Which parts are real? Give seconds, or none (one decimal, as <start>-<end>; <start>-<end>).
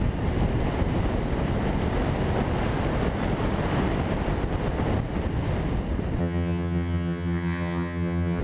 0.0-6.2